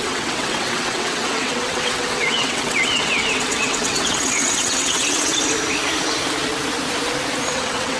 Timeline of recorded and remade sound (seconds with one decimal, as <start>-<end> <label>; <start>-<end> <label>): 0.0-5.3 remade; 5.3-7.5 recorded; 7.5-8.0 remade